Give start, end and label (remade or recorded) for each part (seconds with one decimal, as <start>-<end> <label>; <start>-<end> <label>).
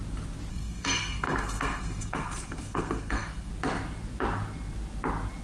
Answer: 0.0-0.5 recorded; 0.5-3.5 remade; 3.5-5.4 recorded